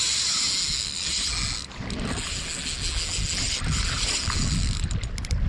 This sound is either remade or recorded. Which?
recorded